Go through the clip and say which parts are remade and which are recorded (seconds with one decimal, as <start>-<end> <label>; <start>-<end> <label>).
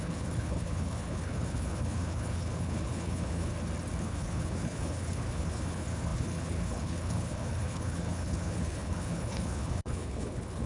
0.0-3.5 remade; 3.5-4.0 recorded; 4.0-10.7 remade